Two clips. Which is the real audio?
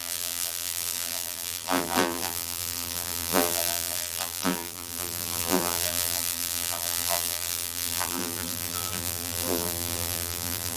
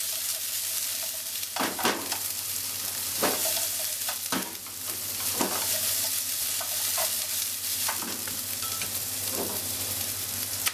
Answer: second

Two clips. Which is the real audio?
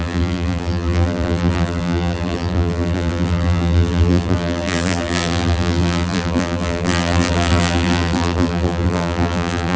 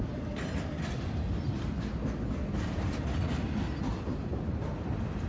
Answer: second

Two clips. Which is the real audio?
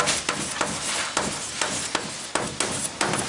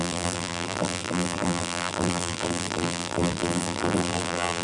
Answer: first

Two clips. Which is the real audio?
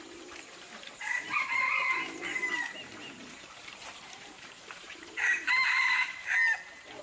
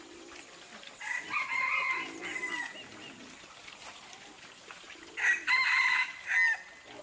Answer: second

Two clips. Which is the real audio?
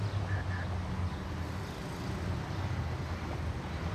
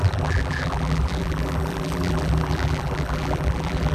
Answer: first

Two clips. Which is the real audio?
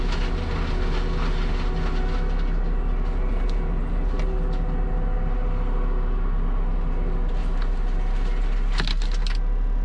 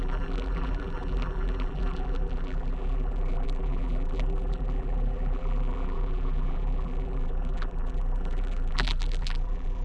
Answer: first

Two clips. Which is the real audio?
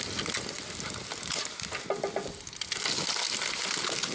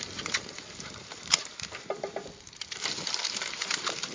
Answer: first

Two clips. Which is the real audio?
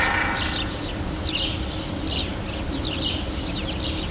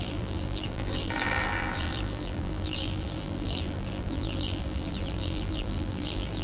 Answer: first